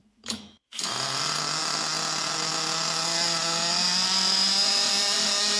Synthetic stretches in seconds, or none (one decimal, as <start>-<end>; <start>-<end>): 0.0-0.9